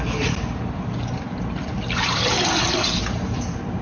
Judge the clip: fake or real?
real